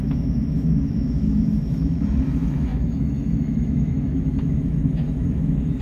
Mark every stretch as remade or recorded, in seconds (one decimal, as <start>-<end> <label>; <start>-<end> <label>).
0.0-5.8 remade

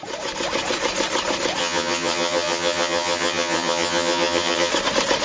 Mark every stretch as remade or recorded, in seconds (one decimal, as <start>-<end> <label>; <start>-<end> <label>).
0.0-1.6 recorded; 1.6-4.7 remade; 4.7-5.2 recorded

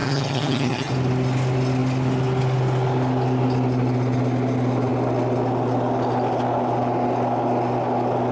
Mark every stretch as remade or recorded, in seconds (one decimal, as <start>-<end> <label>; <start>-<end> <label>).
0.0-0.9 remade; 0.9-8.3 recorded

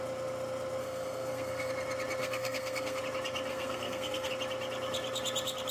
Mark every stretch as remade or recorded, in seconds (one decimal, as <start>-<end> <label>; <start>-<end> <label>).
0.0-0.8 recorded; 0.8-1.7 remade; 1.7-2.2 recorded; 2.2-3.0 remade; 3.0-3.5 recorded; 3.5-4.3 remade; 4.3-5.7 recorded

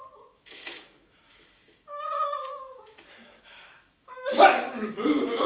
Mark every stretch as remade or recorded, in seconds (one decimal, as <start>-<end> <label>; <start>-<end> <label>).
0.0-5.5 remade

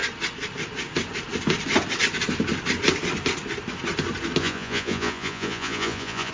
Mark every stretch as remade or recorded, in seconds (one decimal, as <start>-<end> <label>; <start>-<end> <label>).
0.0-4.4 recorded; 4.4-6.3 remade